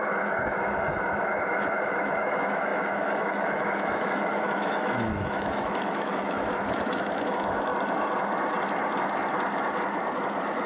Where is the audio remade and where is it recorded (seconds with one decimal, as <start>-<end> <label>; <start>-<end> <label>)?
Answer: 0.0-7.7 remade; 7.7-10.7 recorded

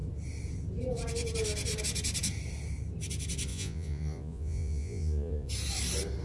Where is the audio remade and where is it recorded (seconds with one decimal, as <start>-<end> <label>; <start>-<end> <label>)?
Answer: 0.0-3.5 recorded; 3.5-5.5 remade; 5.5-6.2 recorded

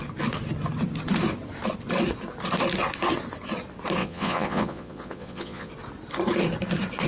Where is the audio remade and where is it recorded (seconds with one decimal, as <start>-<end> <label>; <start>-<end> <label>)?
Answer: 0.0-4.0 recorded; 4.0-5.7 remade; 5.7-7.1 recorded

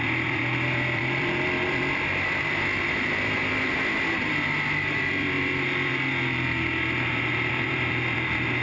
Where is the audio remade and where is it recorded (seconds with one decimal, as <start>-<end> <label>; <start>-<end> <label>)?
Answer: 0.0-8.6 remade

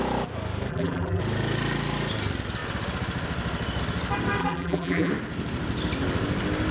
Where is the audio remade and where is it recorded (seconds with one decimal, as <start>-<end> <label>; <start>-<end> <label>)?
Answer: 0.0-0.7 recorded; 0.7-1.2 remade; 1.2-4.4 recorded; 4.4-5.1 remade; 5.1-6.7 recorded